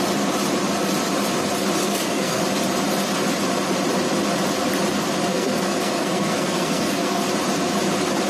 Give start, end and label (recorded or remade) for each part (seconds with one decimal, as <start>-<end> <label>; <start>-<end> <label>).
0.0-1.8 recorded; 1.8-2.4 remade; 2.4-5.3 recorded; 5.3-7.2 remade; 7.2-8.3 recorded